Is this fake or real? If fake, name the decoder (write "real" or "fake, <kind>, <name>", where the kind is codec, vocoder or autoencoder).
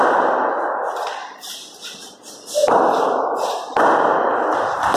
real